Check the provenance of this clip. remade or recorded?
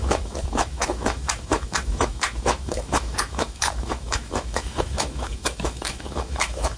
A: remade